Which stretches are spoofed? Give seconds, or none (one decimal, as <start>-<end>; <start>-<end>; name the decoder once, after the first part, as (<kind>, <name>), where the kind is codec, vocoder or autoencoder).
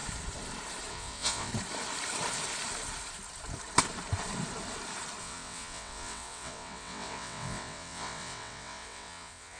0.9-1.5 (vocoder, WaveNeXt); 5.2-9.6